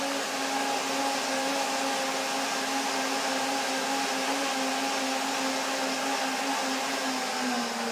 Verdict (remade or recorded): recorded